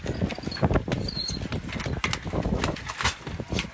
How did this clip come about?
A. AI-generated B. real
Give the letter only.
B